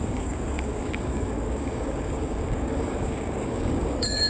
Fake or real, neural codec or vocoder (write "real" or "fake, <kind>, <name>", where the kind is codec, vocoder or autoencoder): fake, codec, DAC